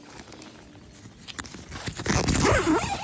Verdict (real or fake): real